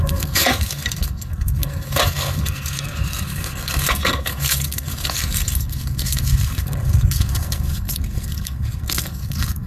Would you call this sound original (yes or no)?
no